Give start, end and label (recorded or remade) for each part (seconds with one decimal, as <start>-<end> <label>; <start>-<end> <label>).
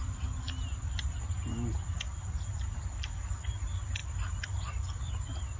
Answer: 0.0-5.6 recorded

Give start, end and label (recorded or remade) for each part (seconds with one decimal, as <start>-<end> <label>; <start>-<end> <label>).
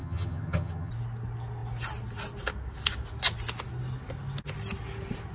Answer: 0.0-0.9 remade; 0.9-5.3 recorded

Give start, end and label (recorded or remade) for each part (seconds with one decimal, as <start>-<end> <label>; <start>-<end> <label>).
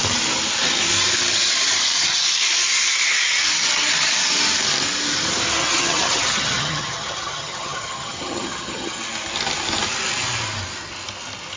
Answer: 0.0-5.6 recorded; 5.6-9.0 remade; 9.0-11.6 recorded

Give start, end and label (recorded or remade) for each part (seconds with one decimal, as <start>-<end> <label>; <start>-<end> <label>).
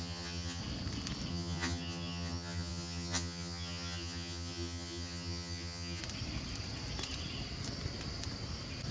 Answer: 0.0-0.6 remade; 0.6-1.3 recorded; 1.3-6.0 remade; 6.0-8.9 recorded